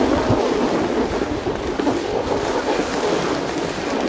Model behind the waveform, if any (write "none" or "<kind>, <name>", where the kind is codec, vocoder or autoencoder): none